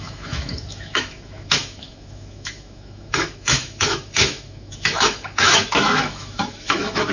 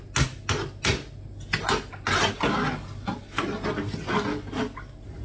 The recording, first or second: second